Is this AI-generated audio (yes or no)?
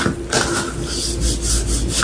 no